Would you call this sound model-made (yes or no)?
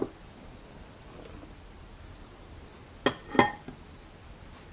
no